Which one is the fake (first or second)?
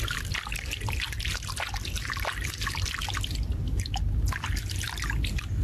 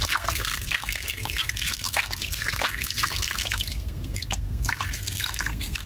second